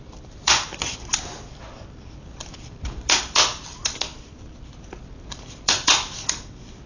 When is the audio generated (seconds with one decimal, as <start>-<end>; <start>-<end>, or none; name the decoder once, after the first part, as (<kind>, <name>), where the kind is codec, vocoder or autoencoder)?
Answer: 0.0-0.9 (vocoder, BigVGAN v2); 2.1-6.9